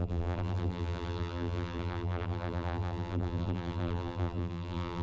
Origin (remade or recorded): remade